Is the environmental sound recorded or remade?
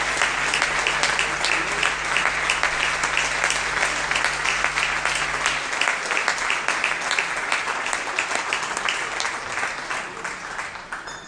recorded